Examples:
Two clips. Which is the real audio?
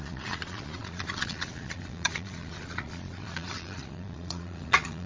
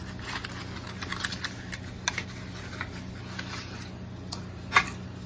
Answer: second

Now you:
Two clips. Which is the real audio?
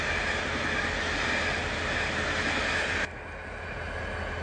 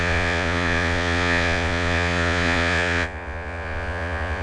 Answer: first